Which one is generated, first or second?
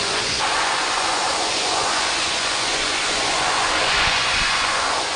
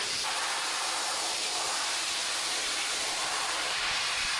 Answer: first